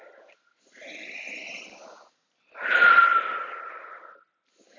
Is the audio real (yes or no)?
yes